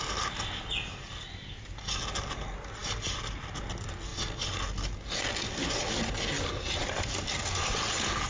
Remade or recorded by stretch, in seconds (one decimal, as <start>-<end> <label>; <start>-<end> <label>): 0.0-8.3 recorded